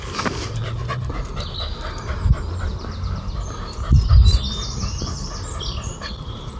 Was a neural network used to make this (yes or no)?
no